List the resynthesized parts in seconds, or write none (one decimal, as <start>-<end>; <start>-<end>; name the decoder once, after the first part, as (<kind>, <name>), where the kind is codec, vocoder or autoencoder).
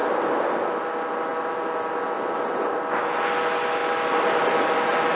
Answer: none